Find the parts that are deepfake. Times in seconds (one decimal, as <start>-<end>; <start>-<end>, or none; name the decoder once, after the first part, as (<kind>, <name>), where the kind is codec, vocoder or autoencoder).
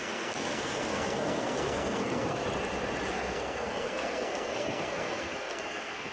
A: 0.0-2.4 (codec, SNAC); 3.1-6.1